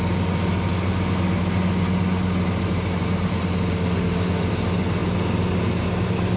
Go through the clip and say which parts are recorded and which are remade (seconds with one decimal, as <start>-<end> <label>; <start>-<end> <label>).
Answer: 0.0-6.4 recorded